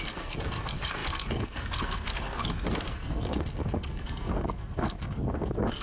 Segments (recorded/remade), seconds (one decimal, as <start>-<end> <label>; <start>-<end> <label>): 0.0-5.8 remade